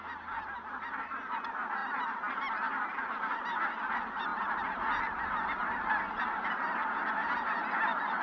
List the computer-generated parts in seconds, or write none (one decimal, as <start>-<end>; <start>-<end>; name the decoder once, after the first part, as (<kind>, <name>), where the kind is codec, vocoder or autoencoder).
none